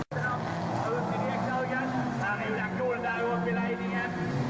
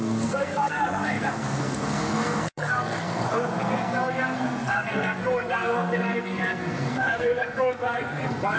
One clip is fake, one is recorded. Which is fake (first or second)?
second